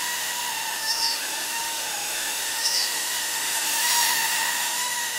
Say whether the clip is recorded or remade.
remade